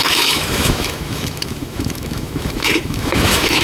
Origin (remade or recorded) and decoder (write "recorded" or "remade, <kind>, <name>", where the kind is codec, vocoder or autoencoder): remade, autoencoder, DAC-VAE